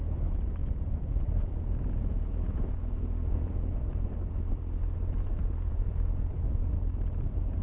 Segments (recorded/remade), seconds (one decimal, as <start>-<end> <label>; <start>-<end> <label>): 0.0-0.6 recorded; 0.6-3.7 remade; 3.7-5.4 recorded; 5.4-6.7 remade; 6.7-7.6 recorded